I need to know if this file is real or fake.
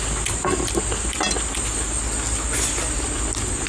real